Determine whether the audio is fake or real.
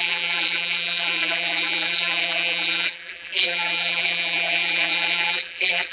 fake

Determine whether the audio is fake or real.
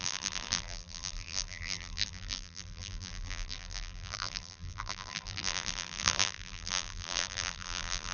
fake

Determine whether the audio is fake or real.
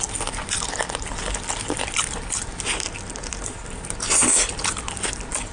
real